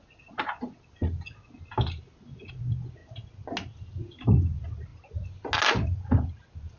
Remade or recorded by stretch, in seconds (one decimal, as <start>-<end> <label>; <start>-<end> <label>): 0.0-6.8 recorded